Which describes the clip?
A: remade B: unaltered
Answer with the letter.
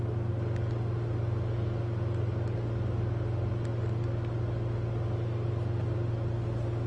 B